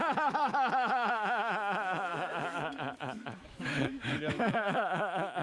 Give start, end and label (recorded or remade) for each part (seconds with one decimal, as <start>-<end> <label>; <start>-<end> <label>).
0.0-5.4 remade

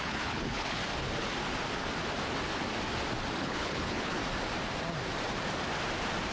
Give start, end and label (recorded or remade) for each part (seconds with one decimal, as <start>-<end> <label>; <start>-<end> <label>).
0.0-0.8 remade; 0.8-3.4 recorded; 3.4-4.2 remade; 4.2-6.3 recorded

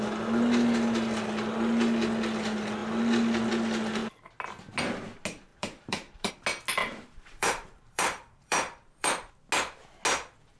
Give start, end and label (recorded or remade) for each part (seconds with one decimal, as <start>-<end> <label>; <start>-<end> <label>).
0.0-5.5 recorded; 5.5-6.3 remade; 6.3-6.8 recorded; 6.8-9.3 remade; 9.3-10.6 recorded

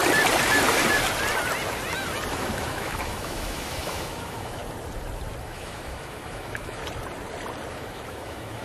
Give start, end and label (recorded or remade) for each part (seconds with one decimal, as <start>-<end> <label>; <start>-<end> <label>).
0.0-2.3 recorded; 2.3-4.6 remade; 4.6-5.4 recorded; 5.4-6.8 remade; 6.8-7.7 recorded; 7.7-8.6 remade

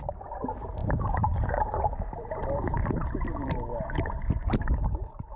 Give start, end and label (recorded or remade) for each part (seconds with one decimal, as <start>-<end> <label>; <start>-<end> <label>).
0.0-5.4 remade